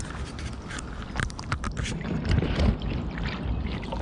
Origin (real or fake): real